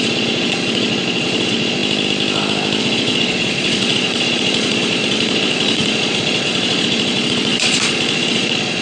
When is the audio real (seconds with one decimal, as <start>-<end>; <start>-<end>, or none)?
1.8-2.8